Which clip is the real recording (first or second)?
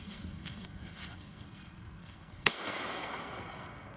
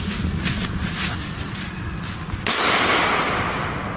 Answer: second